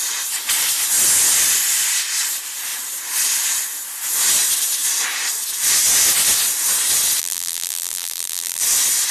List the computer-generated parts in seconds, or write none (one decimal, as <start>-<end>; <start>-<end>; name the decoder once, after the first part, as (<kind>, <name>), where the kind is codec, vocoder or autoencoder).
7.2-8.6 (vocoder, BigVGAN v2)